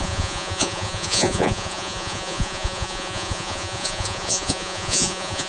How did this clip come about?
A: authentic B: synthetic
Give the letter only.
B